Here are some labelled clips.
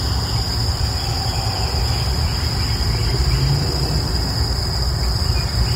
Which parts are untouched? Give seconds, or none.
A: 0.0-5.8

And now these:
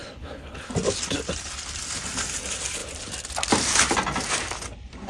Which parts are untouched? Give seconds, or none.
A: 0.7-5.1

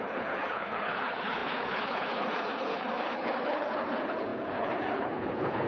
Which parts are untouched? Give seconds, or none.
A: none